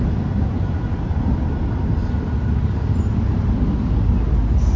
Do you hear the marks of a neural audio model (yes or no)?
no